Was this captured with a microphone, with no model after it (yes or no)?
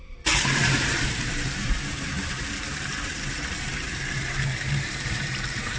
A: no